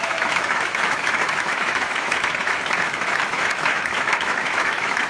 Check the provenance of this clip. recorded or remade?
remade